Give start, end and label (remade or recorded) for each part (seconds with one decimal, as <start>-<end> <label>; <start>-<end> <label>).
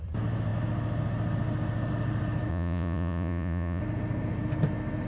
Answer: 0.0-2.5 recorded; 2.5-3.8 remade; 3.8-5.1 recorded